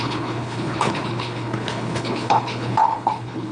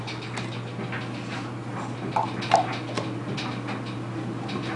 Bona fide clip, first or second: second